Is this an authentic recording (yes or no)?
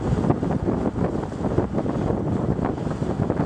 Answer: yes